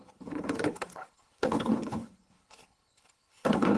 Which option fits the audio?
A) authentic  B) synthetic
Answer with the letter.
B